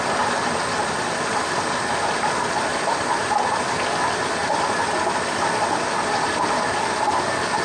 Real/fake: real